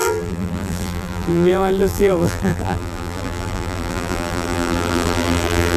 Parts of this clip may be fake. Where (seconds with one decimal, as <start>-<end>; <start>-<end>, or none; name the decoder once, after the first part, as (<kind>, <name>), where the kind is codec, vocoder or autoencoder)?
0.0-5.8 (vocoder, BigVGAN v2)